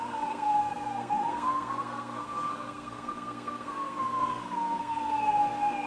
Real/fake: fake